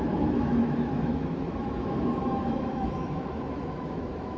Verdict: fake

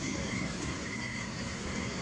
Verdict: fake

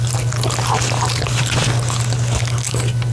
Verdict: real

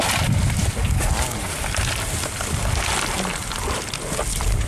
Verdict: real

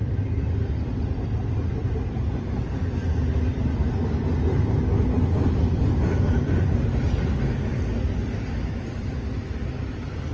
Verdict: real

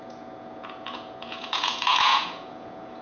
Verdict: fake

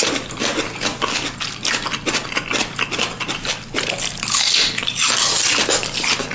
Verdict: real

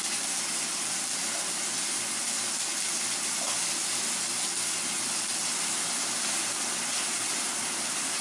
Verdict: real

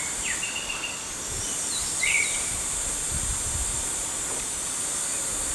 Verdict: real